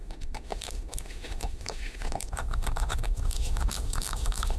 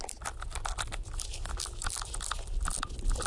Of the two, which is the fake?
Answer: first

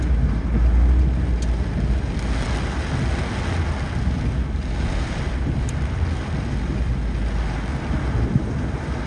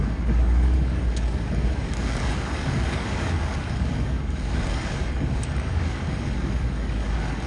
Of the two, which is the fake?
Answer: second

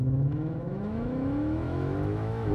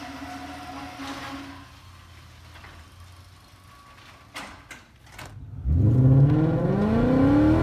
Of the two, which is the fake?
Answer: first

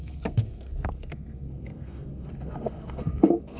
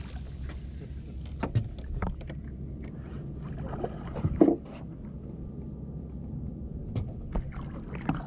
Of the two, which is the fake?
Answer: first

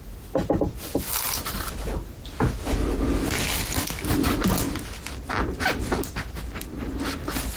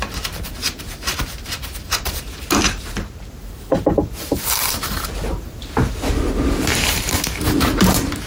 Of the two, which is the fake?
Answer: second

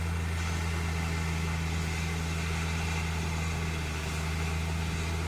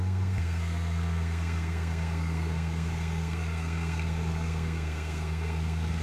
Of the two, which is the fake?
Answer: second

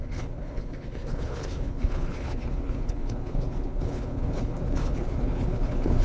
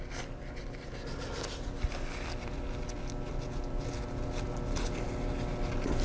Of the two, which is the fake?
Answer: first